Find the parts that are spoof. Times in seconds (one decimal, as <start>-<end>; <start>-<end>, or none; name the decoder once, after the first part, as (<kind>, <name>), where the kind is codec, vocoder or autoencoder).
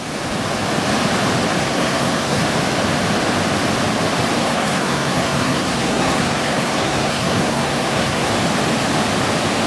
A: 1.6-2.4 (codec, SNAC); 4.4-8.3